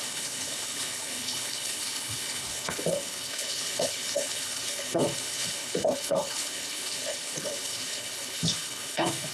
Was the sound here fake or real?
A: fake